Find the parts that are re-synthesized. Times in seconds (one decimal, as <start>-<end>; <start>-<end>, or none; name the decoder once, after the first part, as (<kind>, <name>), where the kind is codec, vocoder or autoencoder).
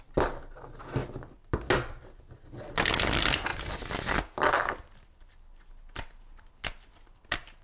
none